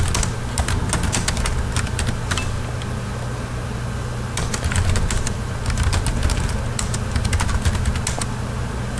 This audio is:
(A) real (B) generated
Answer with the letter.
A